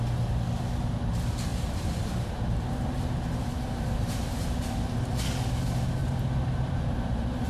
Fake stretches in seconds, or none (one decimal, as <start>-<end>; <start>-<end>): 1.5-4.6; 6.0-7.5